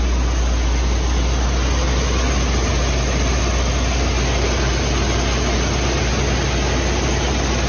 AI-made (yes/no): no